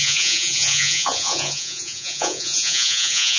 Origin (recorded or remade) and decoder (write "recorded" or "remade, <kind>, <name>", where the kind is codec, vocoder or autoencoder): remade, vocoder, Vocos